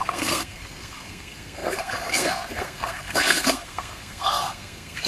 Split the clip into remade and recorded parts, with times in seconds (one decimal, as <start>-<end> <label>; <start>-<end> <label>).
0.0-5.1 remade